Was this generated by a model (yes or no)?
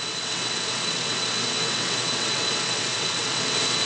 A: yes